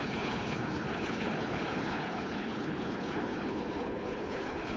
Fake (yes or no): yes